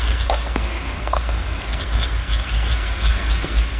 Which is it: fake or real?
fake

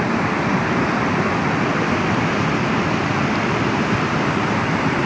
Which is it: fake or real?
real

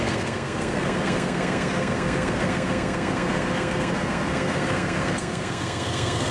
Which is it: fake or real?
fake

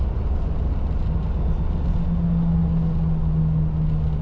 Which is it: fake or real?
real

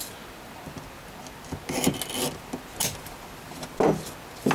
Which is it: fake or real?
real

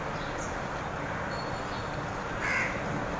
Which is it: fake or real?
real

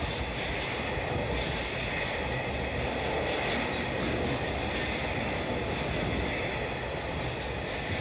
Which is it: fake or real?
real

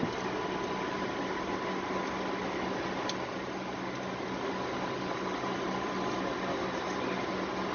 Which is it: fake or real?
real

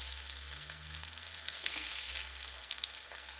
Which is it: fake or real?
fake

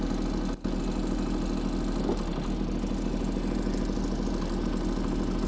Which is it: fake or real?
real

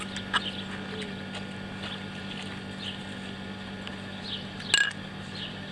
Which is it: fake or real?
real